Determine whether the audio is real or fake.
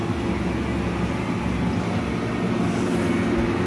real